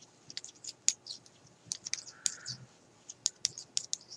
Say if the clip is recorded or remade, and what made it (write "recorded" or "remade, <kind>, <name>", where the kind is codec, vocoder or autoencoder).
recorded